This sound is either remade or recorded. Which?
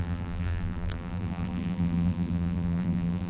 remade